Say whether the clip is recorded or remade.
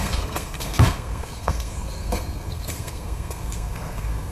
remade